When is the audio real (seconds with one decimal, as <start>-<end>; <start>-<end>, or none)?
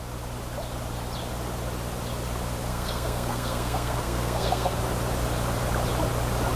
0.0-2.7; 4.8-6.6